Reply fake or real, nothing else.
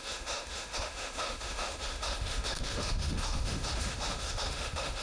fake